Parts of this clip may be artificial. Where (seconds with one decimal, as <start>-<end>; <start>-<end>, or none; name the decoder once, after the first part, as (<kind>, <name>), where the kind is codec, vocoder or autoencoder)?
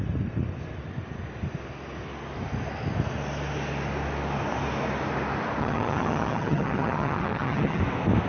5.6-7.8 (vocoder, HiFi-GAN)